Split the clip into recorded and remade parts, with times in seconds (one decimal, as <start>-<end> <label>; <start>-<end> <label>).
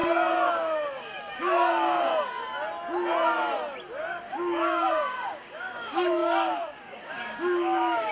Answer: 0.0-0.5 recorded; 0.5-2.1 remade; 2.1-4.1 recorded; 4.1-8.1 remade